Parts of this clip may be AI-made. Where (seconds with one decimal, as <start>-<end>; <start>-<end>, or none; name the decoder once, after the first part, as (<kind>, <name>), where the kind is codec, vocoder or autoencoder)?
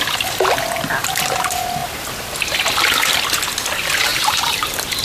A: 4.1-5.0 (vocoder, BigVGAN v2)